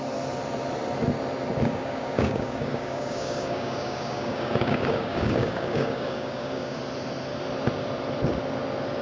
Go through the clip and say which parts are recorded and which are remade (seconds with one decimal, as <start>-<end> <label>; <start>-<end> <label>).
0.0-1.7 recorded; 1.7-6.8 remade; 6.8-9.0 recorded